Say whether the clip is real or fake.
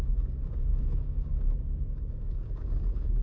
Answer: fake